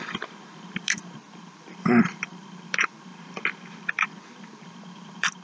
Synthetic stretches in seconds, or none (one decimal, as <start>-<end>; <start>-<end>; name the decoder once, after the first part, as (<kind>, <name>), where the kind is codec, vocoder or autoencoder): 0.0-3.1 (vocoder, BigVGAN v2); 3.7-5.4